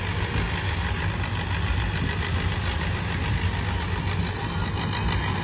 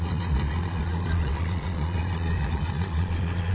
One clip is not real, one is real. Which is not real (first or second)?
second